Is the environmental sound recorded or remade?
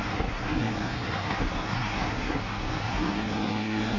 remade